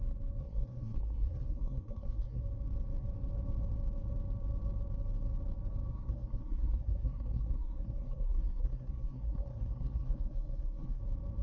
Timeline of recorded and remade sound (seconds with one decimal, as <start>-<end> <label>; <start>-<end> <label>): 0.0-0.4 recorded; 0.4-2.4 remade; 2.4-5.9 recorded; 5.9-11.0 remade; 11.0-11.4 recorded